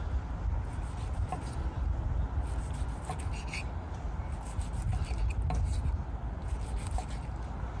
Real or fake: real